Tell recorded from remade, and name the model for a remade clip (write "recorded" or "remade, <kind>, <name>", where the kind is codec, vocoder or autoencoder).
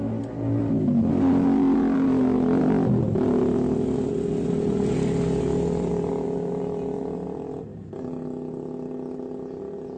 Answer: recorded